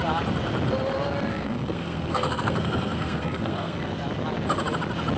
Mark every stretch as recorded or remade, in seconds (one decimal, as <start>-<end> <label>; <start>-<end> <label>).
0.0-1.3 recorded; 1.3-3.9 remade; 3.9-5.2 recorded